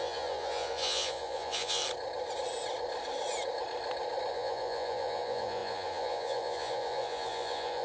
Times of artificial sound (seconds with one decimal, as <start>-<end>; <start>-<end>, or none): 0.0-1.8; 4.3-7.8